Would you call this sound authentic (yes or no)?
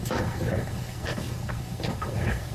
no